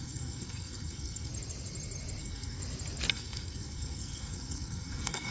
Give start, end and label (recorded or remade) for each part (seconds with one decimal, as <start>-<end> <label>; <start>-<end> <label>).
0.0-1.3 remade; 1.3-2.2 recorded; 2.2-2.6 remade; 2.6-3.1 recorded; 3.1-5.3 remade